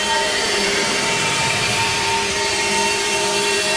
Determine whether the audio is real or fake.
fake